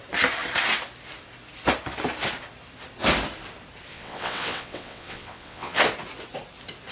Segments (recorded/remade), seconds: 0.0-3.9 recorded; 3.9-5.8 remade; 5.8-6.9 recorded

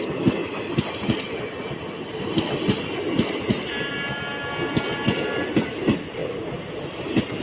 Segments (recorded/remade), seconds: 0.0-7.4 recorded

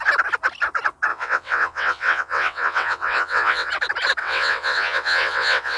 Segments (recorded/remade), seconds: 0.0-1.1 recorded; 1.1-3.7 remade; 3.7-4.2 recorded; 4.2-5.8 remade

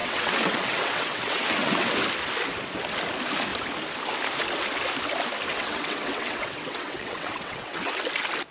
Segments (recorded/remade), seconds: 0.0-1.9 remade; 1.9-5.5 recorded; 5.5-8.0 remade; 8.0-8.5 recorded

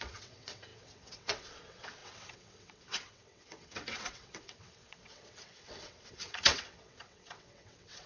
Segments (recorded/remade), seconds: 0.0-8.1 remade

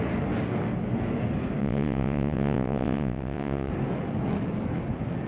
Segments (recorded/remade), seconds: 0.0-1.6 recorded; 1.6-3.7 remade; 3.7-5.3 recorded

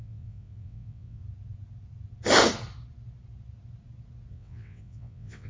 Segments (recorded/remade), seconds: 0.0-1.2 remade; 1.2-4.3 recorded; 4.3-5.5 remade